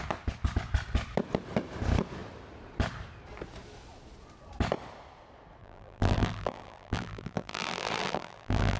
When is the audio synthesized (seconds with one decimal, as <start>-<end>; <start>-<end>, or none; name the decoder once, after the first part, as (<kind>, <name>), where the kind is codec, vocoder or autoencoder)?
5.6-8.8 (vocoder, BigVGAN v2)